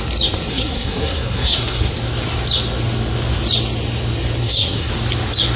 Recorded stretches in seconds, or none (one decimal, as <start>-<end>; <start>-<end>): 0.0-0.5; 1.9-4.4; 4.9-5.6